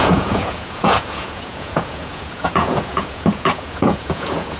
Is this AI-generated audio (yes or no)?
yes